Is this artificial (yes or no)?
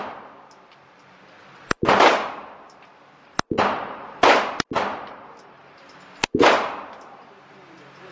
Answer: no